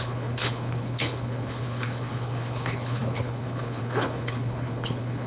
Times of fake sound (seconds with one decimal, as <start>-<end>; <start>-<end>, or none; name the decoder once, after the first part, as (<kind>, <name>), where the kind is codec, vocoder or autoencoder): 0.0-5.3 (codec, HILCodec)